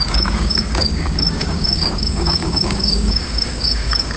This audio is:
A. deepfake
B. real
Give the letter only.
A